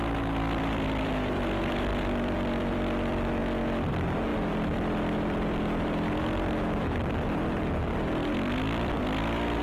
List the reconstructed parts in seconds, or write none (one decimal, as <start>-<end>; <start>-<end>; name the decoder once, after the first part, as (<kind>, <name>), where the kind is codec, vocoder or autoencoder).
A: 0.0-3.4 (vocoder, BigVGAN v2); 3.9-9.6